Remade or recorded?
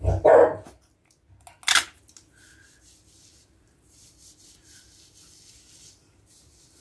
recorded